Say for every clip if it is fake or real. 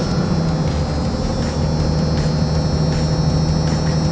real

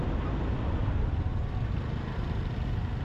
real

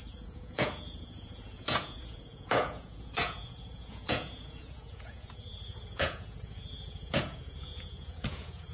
fake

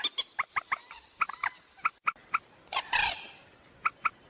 real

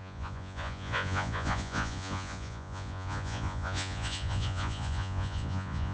fake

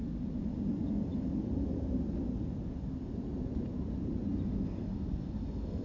real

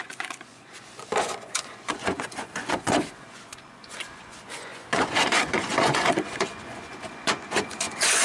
fake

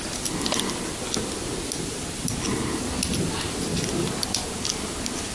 real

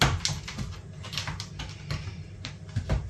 real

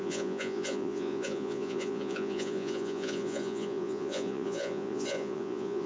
fake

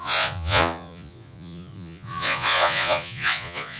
fake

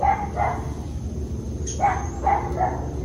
real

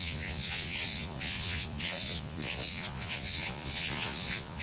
fake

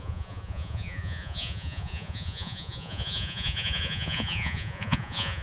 fake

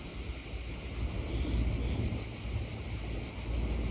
real